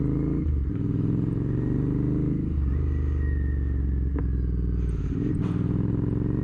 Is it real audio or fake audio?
real